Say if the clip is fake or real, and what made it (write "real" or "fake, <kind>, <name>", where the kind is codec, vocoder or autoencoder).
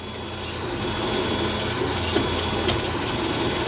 real